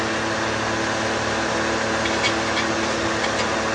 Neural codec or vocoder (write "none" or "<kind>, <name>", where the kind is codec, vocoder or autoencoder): none